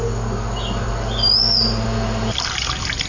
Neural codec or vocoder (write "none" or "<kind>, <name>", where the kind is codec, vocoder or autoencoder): none